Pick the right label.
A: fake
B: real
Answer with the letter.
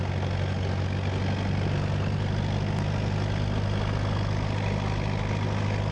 B